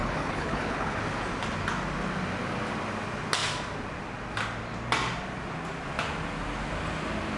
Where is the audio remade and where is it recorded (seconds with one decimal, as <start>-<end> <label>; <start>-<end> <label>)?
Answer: 0.0-1.0 remade; 1.0-7.4 recorded